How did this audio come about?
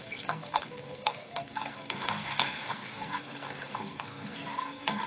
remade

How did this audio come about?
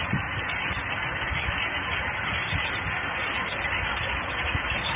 recorded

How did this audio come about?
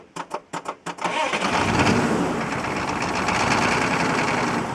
recorded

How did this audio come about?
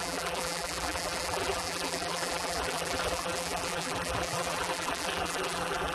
remade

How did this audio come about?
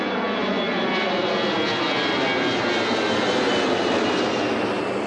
recorded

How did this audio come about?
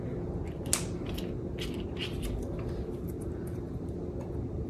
recorded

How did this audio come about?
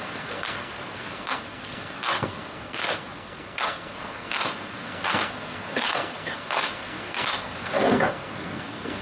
remade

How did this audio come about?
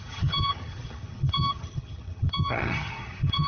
remade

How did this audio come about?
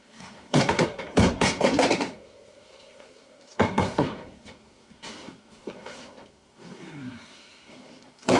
remade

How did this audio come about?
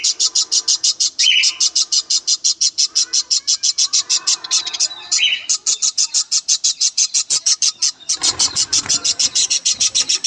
recorded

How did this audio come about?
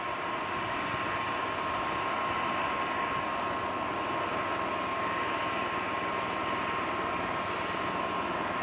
recorded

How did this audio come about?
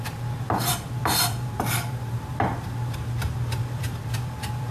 remade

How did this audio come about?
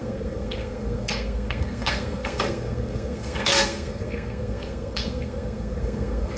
remade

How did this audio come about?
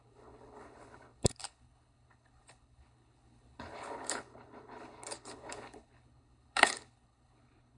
remade